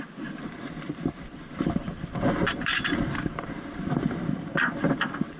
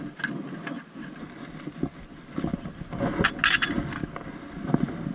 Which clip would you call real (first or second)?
second